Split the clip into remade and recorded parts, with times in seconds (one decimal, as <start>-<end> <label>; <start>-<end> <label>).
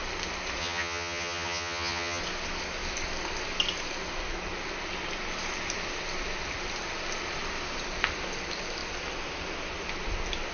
0.0-0.6 recorded; 0.6-2.2 remade; 2.2-10.5 recorded